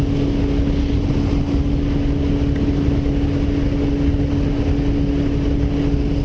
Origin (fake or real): real